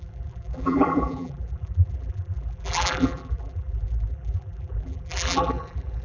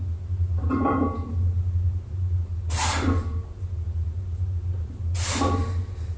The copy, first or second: first